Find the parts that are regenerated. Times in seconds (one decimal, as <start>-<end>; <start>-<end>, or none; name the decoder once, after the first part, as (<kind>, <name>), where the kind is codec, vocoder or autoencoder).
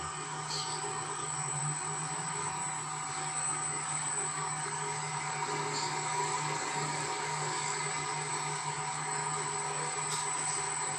0.0-2.6 (codec, DAC); 3.1-11.0